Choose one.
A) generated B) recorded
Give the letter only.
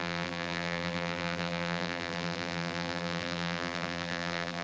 A